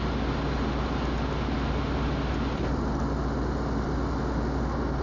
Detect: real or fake real